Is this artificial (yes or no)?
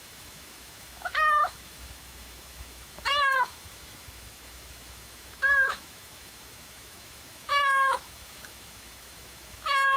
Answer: yes